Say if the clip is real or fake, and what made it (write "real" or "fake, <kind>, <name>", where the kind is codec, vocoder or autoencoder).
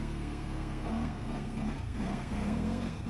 fake, codec, SNAC